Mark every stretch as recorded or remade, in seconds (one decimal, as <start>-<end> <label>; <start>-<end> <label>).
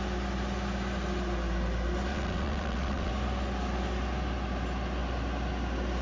0.0-2.1 recorded; 2.1-3.1 remade; 3.1-6.0 recorded